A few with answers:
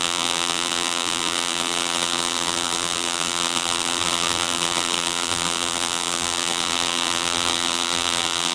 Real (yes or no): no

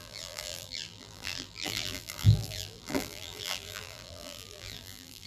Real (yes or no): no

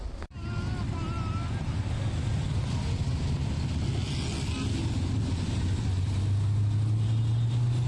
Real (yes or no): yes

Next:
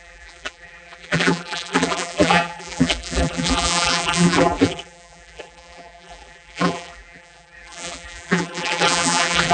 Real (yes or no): no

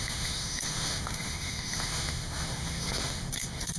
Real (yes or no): no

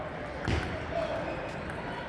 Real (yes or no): yes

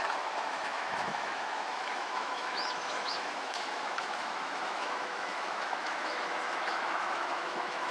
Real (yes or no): no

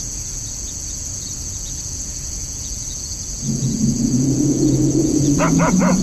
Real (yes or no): no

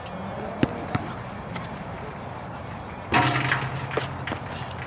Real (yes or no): yes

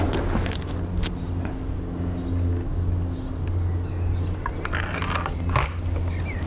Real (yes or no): yes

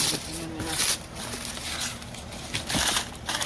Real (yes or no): yes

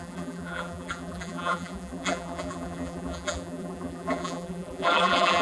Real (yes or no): no